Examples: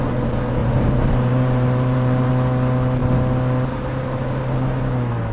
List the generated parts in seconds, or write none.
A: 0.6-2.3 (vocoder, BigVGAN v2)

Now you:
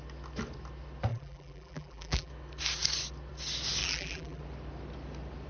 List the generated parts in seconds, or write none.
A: 1.1-2.3 (vocoder, BigVGAN v2); 3.8-4.4

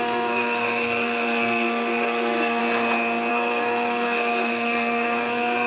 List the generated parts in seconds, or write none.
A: 0.0-2.6 (codec, SNAC); 3.3-5.7

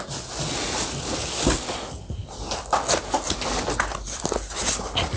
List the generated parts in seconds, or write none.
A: none

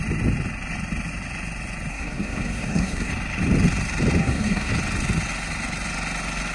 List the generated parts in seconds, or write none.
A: 1.9-3.1 (codec, SNAC); 4.2-4.7

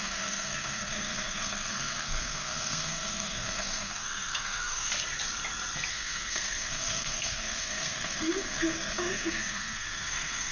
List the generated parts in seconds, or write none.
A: 0.0-4.9 (codec, SNAC); 5.9-10.5

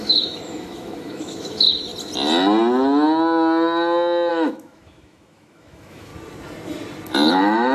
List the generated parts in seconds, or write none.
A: 0.0-1.9 (autoencoder, DAC-VAE); 4.3-6.1; 7.3-7.7